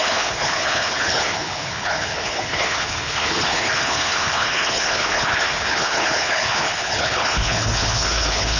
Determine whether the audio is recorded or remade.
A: remade